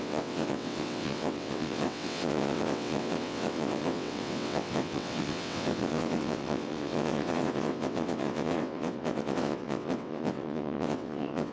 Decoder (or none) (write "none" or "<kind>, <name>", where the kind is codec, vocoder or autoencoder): vocoder, WaveNeXt